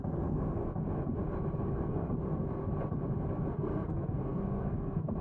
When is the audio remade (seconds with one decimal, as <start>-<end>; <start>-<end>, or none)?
0.0-0.6; 1.8-2.6; 3.5-5.2